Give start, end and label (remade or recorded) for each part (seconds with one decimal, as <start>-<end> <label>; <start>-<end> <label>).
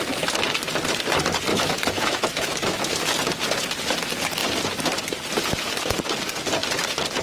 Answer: 0.0-1.5 recorded; 1.5-3.0 remade; 3.0-7.2 recorded